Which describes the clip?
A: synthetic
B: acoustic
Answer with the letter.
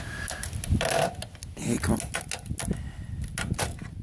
B